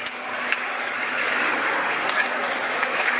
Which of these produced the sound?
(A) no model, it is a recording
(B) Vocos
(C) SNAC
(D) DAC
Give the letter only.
D